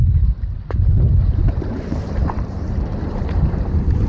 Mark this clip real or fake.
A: fake